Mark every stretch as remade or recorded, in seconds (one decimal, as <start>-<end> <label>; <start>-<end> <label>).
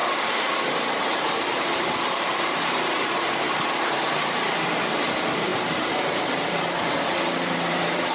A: 0.0-8.1 remade